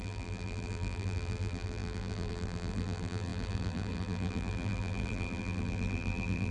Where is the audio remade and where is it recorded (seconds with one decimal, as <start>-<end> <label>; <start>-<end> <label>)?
0.0-6.5 remade